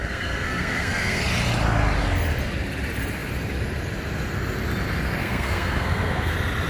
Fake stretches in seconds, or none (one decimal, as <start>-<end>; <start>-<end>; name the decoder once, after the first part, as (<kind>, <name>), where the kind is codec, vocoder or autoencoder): 0.0-1.2 (codec, SNAC); 5.2-6.3